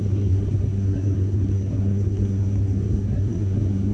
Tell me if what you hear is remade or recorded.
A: remade